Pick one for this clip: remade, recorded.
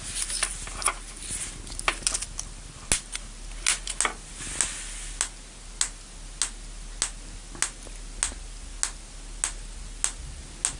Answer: recorded